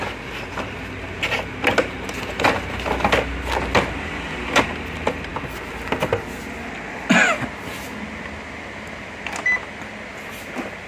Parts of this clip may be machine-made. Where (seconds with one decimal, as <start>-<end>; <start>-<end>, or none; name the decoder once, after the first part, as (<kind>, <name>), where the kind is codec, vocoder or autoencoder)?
none